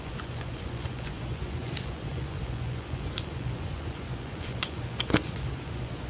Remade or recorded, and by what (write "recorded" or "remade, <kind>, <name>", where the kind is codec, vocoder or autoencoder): remade, vocoder, Vocos